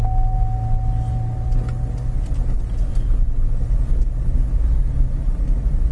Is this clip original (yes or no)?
yes